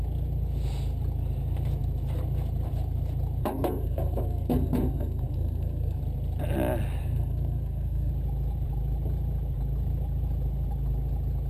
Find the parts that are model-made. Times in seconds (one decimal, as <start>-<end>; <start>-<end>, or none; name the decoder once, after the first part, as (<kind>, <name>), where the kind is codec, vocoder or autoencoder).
3.4-6.0 (codec, SNAC); 7.0-8.1